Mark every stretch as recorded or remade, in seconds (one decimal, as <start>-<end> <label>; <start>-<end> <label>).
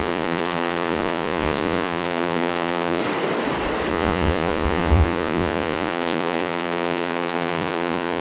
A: 0.0-3.0 remade; 3.0-3.9 recorded; 3.9-8.2 remade